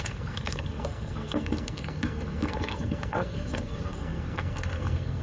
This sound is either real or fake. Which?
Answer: fake